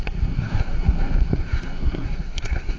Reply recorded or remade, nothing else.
remade